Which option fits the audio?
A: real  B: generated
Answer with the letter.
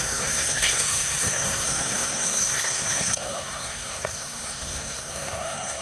B